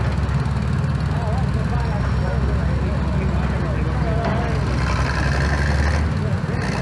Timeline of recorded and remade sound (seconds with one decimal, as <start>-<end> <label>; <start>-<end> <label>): 0.0-6.8 recorded